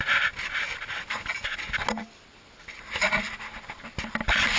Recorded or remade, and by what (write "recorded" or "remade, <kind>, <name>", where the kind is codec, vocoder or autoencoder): recorded